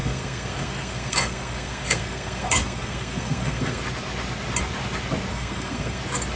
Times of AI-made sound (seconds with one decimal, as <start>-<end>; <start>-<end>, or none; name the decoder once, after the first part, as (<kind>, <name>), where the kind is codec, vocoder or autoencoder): 0.0-3.8 (codec, SNAC); 5.3-6.0